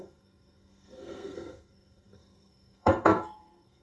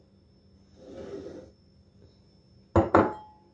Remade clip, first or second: first